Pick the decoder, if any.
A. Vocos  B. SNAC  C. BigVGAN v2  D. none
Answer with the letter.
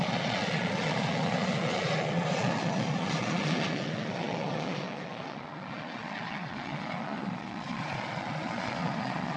A